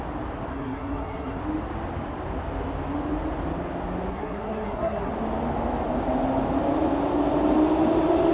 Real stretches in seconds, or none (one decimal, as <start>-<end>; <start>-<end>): 0.0-0.5; 1.4-4.1; 5.1-8.3